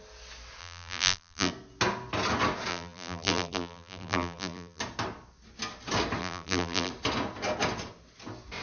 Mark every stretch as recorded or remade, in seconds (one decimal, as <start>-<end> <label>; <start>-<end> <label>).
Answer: 0.0-0.6 recorded; 0.6-1.5 remade; 1.5-2.7 recorded; 2.7-4.8 remade; 4.8-6.2 recorded; 6.2-6.9 remade; 6.9-8.6 recorded